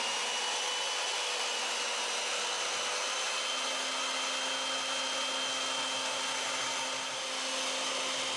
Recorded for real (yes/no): yes